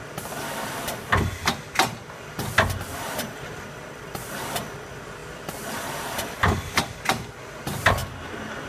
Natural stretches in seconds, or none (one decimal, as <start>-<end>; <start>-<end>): 1.4-2.3; 8.0-8.7